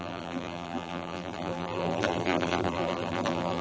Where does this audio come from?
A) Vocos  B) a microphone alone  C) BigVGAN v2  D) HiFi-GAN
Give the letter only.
C